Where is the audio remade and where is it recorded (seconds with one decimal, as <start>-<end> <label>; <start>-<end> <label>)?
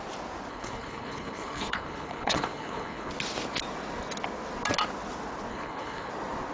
0.0-0.5 recorded; 0.5-3.1 remade; 3.1-5.5 recorded; 5.5-6.1 remade; 6.1-6.5 recorded